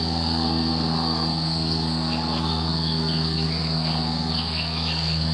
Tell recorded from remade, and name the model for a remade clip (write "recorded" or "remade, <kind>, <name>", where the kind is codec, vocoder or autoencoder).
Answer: remade, codec, SNAC